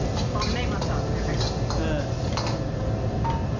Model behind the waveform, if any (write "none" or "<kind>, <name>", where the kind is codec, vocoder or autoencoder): none